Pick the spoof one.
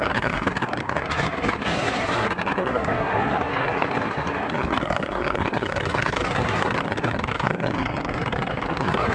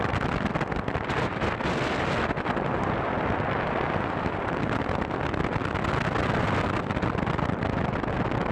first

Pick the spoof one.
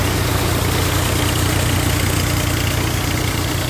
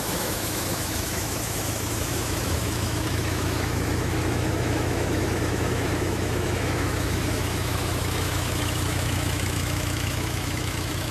second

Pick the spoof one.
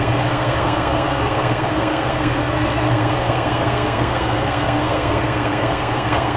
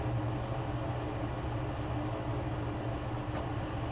first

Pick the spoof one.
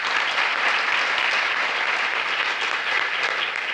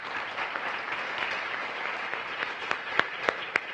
second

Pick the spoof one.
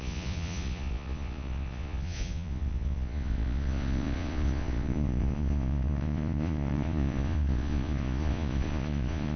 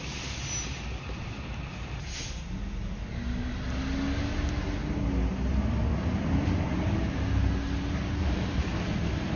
first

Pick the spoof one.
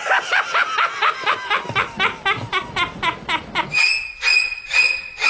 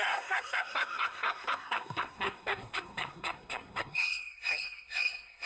second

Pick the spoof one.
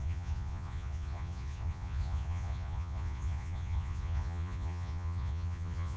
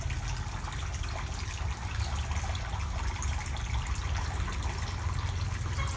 first